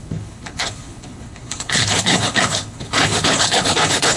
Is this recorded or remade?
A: remade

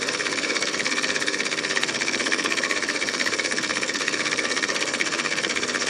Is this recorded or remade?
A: remade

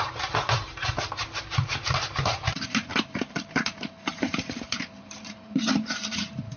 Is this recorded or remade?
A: remade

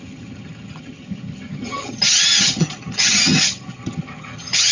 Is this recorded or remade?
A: remade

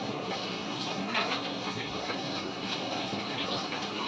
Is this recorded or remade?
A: remade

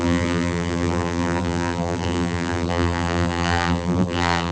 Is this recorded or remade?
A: remade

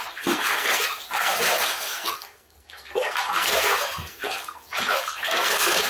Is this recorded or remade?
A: remade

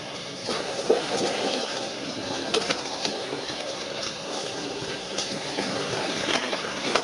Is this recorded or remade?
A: remade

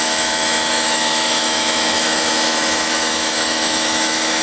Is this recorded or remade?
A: remade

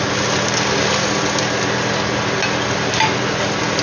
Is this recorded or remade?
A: recorded